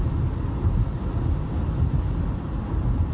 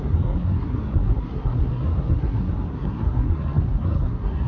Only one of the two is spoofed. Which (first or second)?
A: second